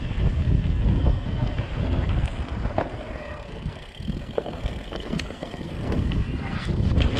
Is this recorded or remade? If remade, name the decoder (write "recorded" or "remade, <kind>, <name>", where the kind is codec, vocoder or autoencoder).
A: remade, codec, SNAC